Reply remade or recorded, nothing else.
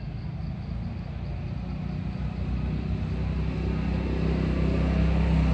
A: recorded